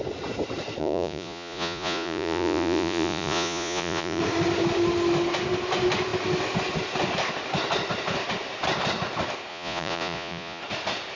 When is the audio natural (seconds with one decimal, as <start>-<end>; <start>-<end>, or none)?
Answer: 0.0-0.8; 4.2-9.5; 10.6-11.2